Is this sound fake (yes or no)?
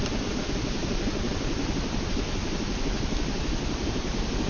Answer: no